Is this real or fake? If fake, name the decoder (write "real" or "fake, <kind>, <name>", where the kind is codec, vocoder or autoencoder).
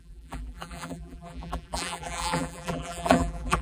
fake, vocoder, BigVGAN v2